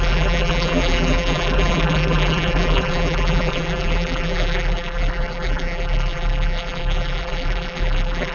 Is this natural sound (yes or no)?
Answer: no